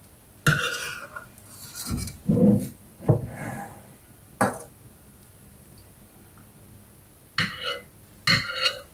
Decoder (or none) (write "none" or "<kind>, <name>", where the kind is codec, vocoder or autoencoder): none